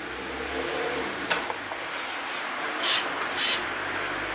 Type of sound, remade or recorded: recorded